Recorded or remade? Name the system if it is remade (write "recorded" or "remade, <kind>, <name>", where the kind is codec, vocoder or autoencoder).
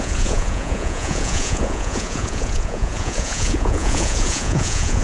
remade, vocoder, Vocos